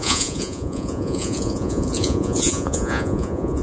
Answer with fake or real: fake